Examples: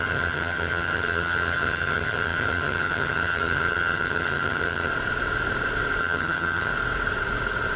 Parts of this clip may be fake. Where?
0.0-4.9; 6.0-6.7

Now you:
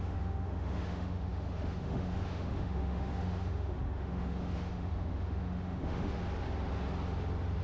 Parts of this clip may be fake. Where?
0.0-6.2

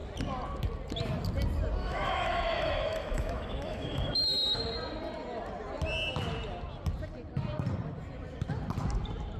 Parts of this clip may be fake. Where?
1.8-4.7